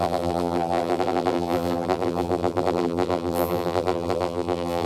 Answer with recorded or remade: remade